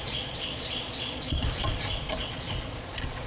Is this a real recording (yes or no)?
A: no